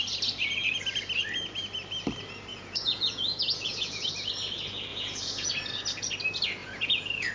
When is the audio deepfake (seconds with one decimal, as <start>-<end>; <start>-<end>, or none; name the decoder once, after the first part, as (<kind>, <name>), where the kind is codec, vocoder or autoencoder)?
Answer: 2.5-4.1 (vocoder, Vocos); 4.9-5.5; 6.6-7.3